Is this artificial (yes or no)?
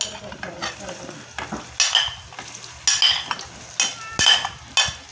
no